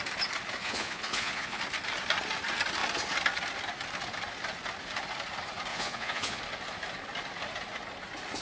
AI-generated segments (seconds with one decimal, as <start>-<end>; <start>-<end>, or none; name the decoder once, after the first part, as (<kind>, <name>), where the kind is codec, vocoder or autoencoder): 0.6-1.6 (vocoder, Vocos); 5.7-6.4